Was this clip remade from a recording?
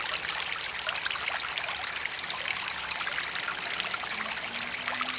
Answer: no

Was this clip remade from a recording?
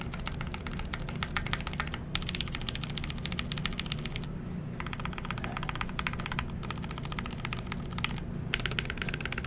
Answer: no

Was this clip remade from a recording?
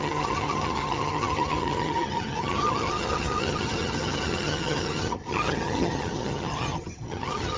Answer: yes